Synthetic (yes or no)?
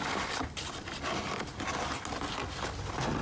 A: no